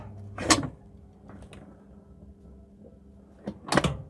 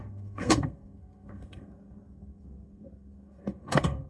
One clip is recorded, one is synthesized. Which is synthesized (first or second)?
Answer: second